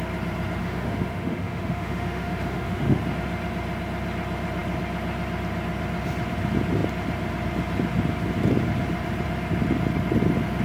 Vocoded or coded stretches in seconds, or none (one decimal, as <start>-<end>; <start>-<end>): 0.6-3.0